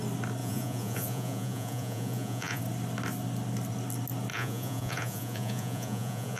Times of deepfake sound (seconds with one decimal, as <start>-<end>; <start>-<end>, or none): 0.4-2.6; 4.3-6.4